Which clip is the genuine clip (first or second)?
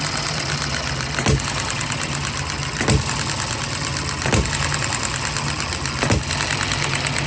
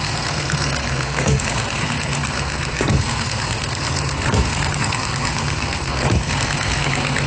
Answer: first